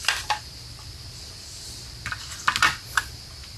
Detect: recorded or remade recorded